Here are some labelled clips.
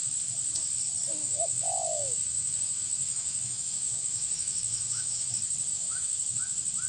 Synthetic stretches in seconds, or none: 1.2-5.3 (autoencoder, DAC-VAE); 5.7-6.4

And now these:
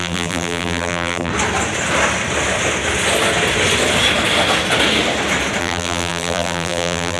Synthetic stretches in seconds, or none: 0.0-1.3 (vocoder, BigVGAN v2); 5.6-7.2

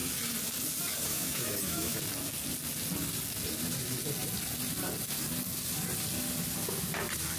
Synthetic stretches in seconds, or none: 1.1-2.0 (autoencoder, DAC-VAE)

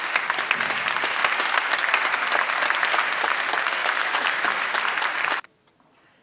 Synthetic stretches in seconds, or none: 3.8-4.8 (autoencoder, DAC-VAE)

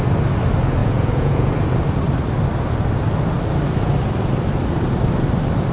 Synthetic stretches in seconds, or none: 0.8-1.5 (vocoder, Vocos)

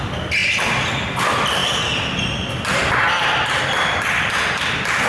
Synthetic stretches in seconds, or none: none

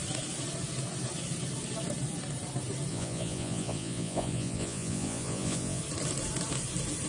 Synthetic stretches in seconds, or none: 2.9-5.8 (vocoder, Vocos)